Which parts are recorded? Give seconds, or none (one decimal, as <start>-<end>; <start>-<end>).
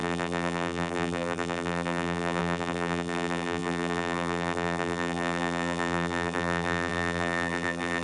none